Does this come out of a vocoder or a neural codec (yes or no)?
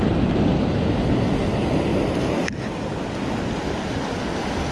no